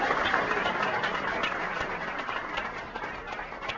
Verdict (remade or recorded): remade